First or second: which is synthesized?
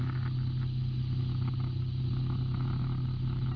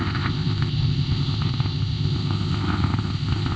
second